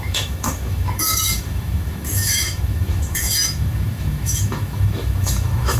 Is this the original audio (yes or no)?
no